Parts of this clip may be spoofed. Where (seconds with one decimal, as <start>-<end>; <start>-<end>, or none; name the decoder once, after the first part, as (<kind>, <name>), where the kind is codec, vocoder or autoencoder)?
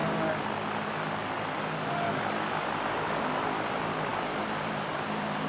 2.5-5.5 (vocoder, BigVGAN v2)